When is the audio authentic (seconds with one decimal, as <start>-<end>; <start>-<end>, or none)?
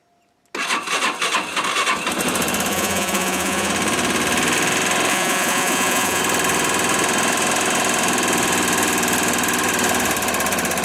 0.0-2.7; 3.7-5.1; 6.2-10.8